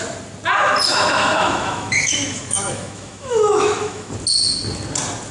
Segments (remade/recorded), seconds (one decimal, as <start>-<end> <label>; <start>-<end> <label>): 0.0-0.9 recorded; 0.9-4.1 remade; 4.1-5.3 recorded